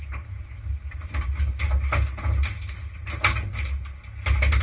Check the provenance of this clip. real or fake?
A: real